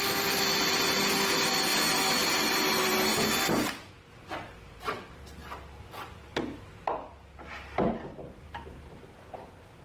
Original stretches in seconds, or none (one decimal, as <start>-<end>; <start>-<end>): 0.0-9.8